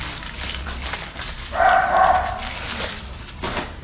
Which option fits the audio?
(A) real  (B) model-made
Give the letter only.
B